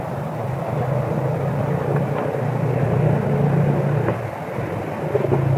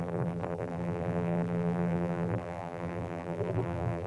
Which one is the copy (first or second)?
second